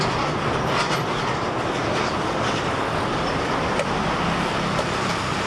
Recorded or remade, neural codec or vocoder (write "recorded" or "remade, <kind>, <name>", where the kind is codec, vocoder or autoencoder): recorded